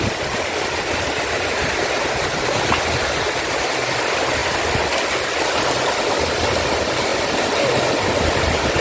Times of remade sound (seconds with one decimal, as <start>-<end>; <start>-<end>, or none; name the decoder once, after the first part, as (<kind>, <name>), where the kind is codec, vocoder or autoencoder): none